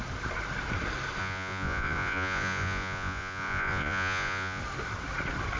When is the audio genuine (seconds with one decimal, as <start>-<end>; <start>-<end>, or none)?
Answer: 0.0-1.2; 4.6-5.6